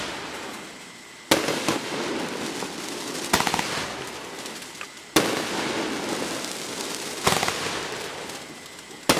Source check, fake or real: real